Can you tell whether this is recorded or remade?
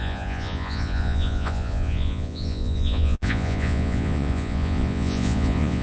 remade